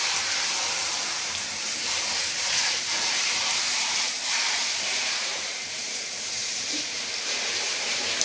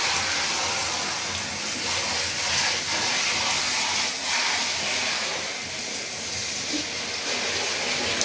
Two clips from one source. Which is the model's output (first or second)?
first